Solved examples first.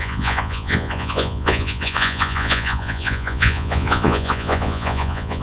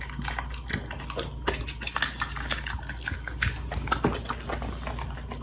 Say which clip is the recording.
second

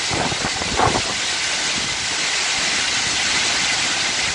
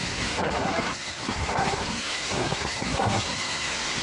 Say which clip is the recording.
first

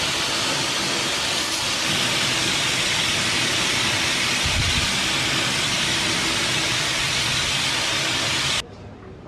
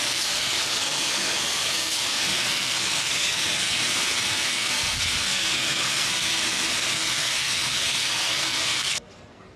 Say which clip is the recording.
first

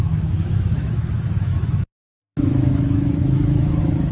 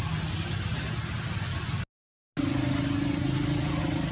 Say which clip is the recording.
second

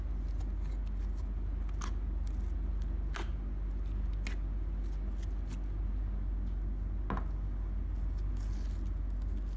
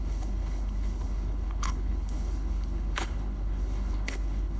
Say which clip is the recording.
first